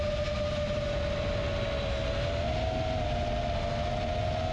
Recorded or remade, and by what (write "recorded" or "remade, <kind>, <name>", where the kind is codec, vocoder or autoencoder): recorded